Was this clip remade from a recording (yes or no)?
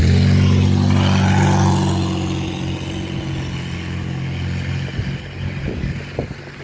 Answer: no